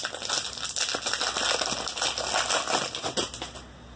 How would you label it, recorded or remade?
recorded